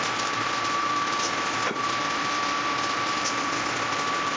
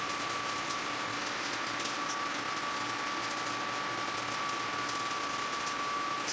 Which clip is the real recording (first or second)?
second